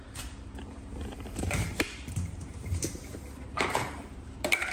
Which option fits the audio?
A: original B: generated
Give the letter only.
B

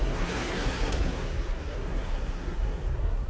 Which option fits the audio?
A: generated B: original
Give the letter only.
A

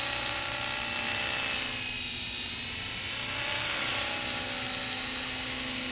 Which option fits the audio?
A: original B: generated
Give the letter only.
A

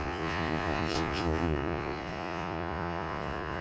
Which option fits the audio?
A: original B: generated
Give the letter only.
B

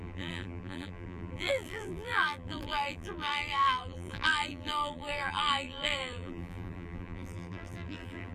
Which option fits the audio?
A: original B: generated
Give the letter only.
B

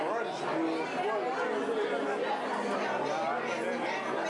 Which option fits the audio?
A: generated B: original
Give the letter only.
B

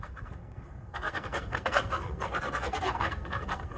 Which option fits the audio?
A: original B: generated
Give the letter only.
B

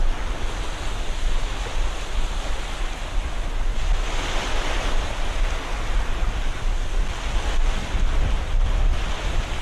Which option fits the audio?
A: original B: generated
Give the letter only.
A